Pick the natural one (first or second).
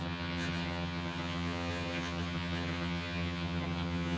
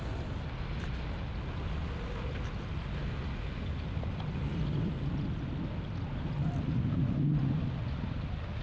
second